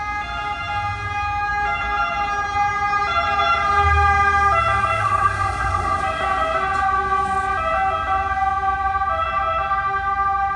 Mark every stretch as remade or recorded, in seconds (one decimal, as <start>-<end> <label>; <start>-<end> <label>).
0.0-5.0 recorded; 5.0-6.0 remade; 6.0-10.6 recorded